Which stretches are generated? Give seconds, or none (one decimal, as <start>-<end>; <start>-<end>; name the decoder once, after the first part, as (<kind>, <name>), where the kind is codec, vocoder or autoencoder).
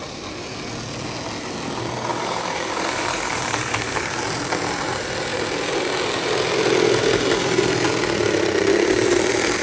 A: 2.1-4.2 (codec, DAC)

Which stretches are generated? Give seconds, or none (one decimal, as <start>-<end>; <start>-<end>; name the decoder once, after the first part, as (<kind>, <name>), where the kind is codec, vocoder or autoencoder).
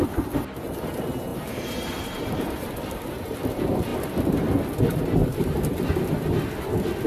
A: 1.3-2.7 (vocoder, BigVGAN v2); 5.2-5.8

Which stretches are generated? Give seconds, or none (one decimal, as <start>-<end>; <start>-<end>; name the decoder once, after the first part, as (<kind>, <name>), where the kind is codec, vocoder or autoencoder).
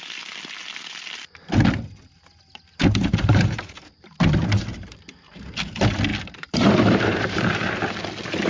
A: 2.8-5.5 (vocoder, BigVGAN v2); 6.1-7.8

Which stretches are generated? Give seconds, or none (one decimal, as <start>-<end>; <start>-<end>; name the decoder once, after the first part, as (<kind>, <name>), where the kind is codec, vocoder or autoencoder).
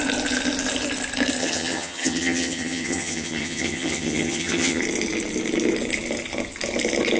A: 1.4-4.8 (vocoder, HiFi-GAN)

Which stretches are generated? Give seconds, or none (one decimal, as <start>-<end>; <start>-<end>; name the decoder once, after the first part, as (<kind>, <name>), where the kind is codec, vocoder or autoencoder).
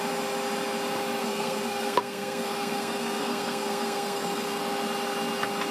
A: 1.2-4.6 (codec, SNAC)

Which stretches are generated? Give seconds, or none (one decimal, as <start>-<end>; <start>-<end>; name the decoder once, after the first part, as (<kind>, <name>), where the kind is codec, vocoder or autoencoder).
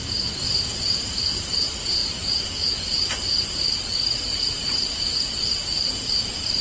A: 0.0-3.9 (vocoder, BigVGAN v2); 4.6-6.6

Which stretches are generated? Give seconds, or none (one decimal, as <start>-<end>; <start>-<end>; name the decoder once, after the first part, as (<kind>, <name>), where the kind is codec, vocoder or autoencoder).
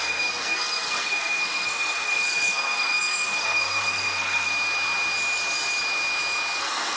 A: 0.0-4.5 (codec, SNAC); 6.6-7.0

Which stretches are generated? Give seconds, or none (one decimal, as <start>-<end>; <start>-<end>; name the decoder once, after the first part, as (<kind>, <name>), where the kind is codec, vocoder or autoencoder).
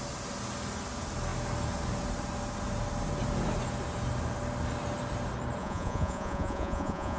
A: 5.6-7.2 (vocoder, Vocos)